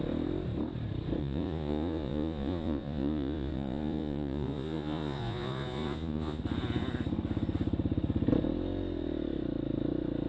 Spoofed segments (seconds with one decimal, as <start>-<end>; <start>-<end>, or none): 1.2-6.4